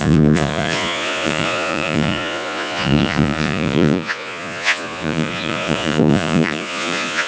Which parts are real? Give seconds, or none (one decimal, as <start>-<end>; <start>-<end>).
none